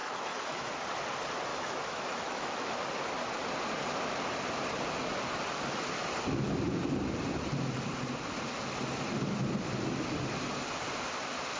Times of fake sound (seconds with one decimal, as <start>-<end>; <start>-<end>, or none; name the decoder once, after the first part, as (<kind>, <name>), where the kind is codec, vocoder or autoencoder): 0.0-0.7 (autoencoder, DAC-VAE); 1.5-2.7